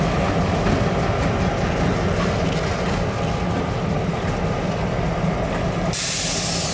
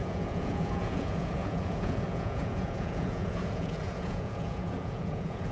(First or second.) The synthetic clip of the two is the second